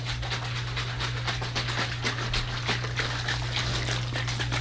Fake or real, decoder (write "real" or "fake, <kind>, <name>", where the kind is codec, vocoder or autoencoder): real